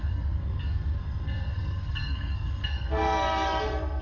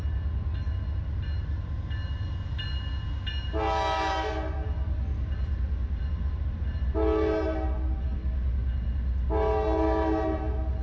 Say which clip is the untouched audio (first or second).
second